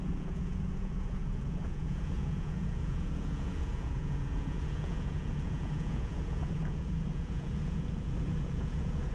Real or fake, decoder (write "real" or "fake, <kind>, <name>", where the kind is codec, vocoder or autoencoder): fake, vocoder, Vocos